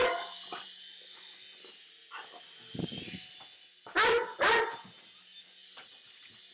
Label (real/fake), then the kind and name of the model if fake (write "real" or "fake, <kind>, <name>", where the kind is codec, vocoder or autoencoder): real